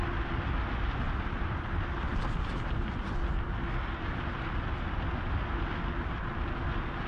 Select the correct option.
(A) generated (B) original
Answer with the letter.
B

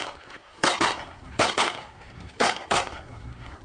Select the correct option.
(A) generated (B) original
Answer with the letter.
A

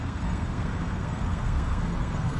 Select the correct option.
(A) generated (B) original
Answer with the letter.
A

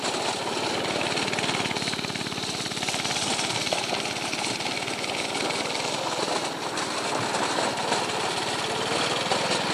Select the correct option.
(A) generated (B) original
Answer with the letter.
B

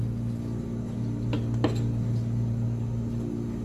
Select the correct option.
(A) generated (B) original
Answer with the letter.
B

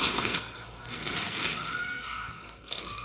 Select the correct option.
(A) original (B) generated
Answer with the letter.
B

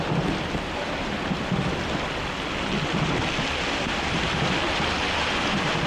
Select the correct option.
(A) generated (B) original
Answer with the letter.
B